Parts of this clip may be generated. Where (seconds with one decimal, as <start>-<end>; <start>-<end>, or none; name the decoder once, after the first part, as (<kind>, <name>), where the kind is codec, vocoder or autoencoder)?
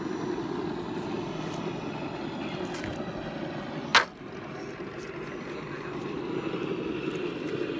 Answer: none